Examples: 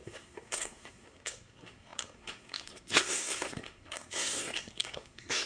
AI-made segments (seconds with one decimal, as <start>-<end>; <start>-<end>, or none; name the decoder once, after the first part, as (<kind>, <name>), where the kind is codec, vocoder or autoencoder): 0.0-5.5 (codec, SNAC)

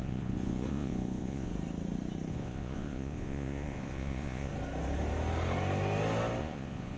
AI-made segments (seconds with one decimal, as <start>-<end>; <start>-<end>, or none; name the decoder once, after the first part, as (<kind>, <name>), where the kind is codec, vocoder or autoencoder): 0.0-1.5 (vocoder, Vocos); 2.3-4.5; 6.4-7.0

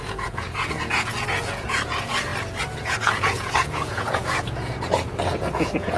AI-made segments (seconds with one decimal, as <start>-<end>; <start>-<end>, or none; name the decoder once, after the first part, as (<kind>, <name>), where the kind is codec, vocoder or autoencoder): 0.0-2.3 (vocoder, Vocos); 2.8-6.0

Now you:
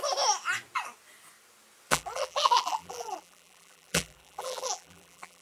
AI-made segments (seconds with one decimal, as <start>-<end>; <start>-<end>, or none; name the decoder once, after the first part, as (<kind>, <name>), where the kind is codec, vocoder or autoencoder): 1.9-5.4 (vocoder, BigVGAN v2)

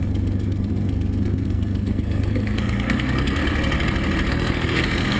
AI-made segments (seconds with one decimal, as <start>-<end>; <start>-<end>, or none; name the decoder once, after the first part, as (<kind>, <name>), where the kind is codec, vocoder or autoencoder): 0.0-3.4 (codec, SNAC); 4.3-5.2